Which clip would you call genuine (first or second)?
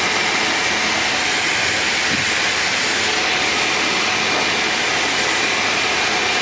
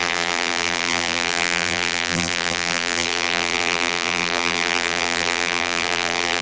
first